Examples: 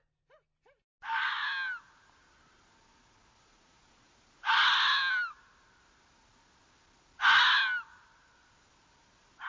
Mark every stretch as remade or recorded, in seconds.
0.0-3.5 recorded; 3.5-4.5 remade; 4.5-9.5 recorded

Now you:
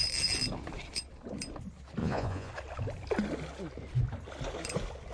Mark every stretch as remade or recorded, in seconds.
0.0-2.0 recorded; 2.0-2.5 remade; 2.5-5.1 recorded

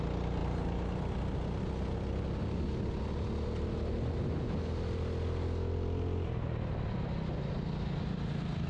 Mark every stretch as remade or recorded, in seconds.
0.0-8.7 recorded

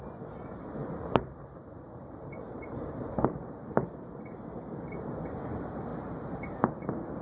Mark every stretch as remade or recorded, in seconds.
0.0-0.8 recorded; 0.8-4.9 remade; 4.9-5.9 recorded; 5.9-7.2 remade

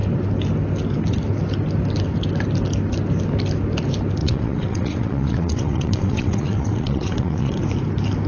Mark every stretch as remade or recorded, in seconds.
0.0-4.2 recorded; 4.2-7.6 remade; 7.6-8.3 recorded

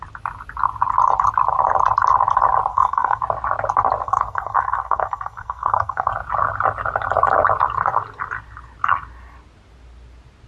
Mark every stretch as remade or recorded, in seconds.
0.0-2.7 recorded; 2.7-3.2 remade; 3.2-4.0 recorded; 4.0-6.1 remade; 6.1-10.5 recorded

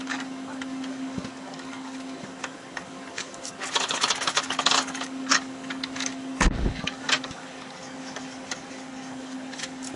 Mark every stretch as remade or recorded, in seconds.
0.0-10.0 remade